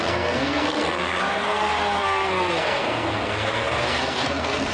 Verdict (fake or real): fake